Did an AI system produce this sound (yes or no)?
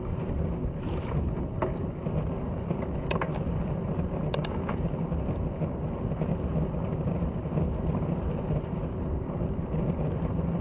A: no